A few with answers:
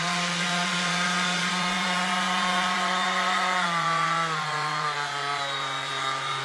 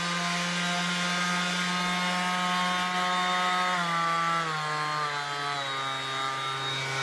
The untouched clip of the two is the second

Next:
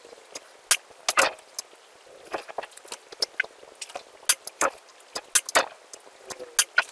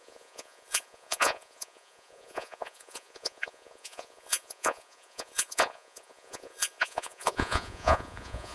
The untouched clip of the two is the first